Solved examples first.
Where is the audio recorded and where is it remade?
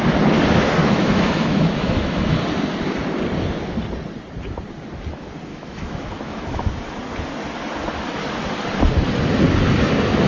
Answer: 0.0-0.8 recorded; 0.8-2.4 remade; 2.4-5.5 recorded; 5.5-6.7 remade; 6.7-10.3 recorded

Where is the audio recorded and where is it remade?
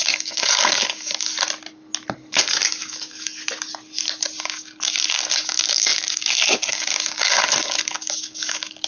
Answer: 0.0-1.3 remade; 1.3-2.3 recorded; 2.3-3.4 remade; 3.4-4.4 recorded; 4.4-8.9 remade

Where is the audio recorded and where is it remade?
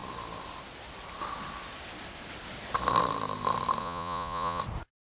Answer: 0.0-3.8 recorded; 3.8-4.6 remade; 4.6-5.0 recorded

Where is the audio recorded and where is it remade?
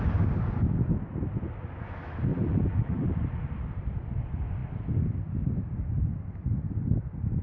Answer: 0.0-2.3 recorded; 2.3-3.1 remade; 3.1-7.4 recorded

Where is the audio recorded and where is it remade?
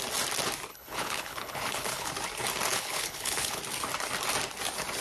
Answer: 0.0-0.7 recorded; 0.7-2.1 remade; 2.1-2.7 recorded; 2.7-3.6 remade; 3.6-5.0 recorded